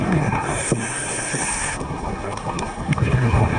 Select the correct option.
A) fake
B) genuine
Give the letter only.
A